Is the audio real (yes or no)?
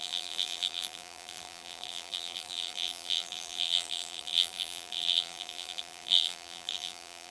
no